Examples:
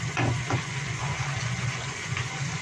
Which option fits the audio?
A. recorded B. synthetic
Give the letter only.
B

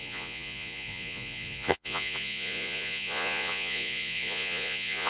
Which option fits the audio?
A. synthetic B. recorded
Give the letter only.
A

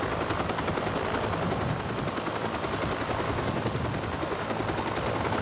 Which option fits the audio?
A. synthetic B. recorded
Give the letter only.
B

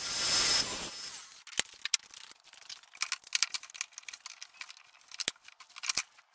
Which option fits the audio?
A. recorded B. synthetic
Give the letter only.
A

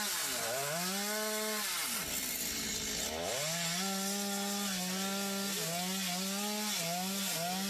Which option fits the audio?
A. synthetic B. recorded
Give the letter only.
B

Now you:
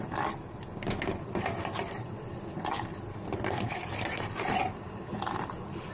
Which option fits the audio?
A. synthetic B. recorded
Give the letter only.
B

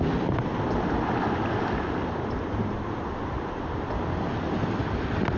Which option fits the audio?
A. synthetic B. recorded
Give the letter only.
B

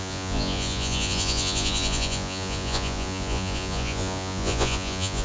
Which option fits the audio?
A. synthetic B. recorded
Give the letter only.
A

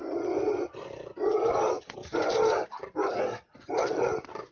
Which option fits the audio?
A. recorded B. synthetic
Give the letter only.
A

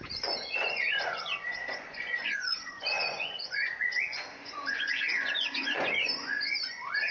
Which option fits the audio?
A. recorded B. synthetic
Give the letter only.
B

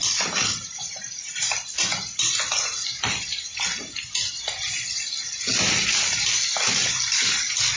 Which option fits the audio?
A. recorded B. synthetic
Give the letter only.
A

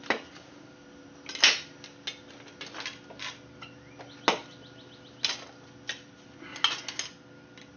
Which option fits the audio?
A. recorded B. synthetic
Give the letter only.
A